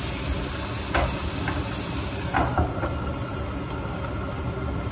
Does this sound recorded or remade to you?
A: recorded